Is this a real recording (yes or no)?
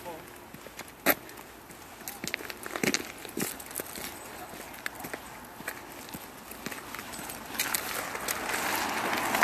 yes